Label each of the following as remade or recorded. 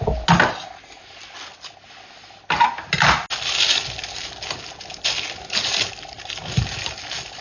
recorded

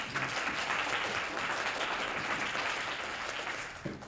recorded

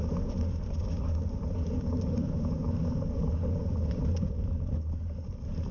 remade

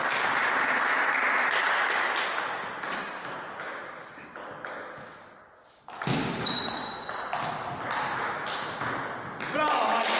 recorded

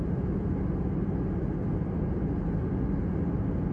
recorded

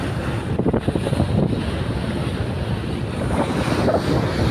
recorded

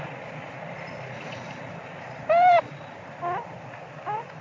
remade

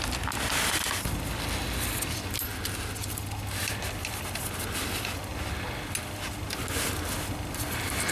recorded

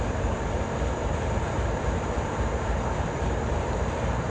remade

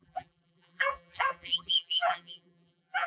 remade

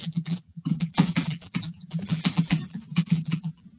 remade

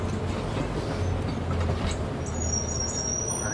recorded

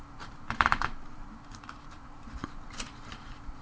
remade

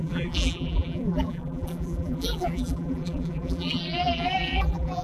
remade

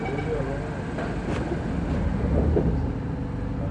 recorded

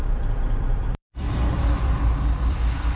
remade